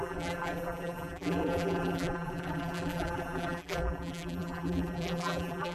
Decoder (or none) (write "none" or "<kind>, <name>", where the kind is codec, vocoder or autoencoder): vocoder, BigVGAN v2